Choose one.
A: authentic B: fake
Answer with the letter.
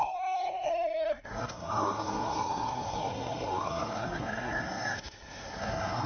B